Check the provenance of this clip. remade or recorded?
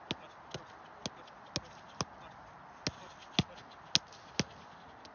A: recorded